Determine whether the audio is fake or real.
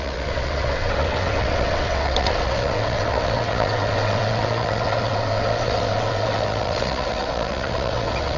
fake